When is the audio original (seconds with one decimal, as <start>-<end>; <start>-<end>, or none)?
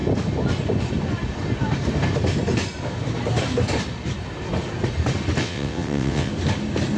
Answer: 0.0-5.4; 6.3-7.0